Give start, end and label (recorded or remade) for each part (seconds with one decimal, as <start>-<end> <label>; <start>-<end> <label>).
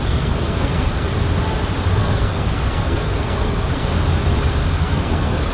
0.0-1.1 remade; 1.1-2.0 recorded; 2.0-3.9 remade; 3.9-4.5 recorded; 4.5-5.5 remade